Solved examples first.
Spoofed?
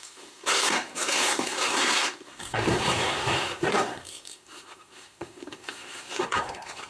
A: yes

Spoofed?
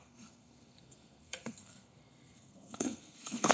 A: yes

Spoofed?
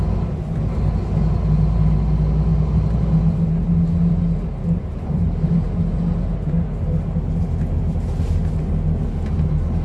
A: no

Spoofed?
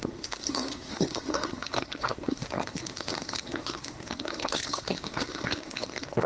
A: yes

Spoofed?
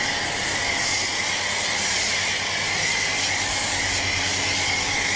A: no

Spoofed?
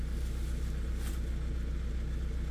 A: no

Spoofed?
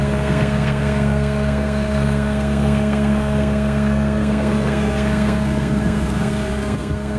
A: yes